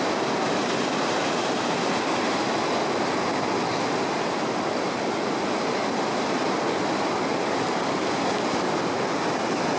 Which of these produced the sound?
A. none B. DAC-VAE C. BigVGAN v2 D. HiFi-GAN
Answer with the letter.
A